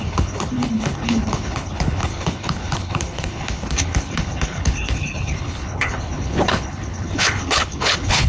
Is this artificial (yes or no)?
yes